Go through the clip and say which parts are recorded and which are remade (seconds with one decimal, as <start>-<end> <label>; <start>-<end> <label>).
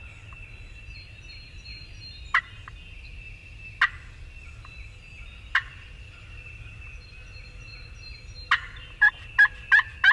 0.0-1.7 recorded; 1.7-2.4 remade; 2.4-5.3 recorded; 5.3-5.9 remade; 5.9-10.1 recorded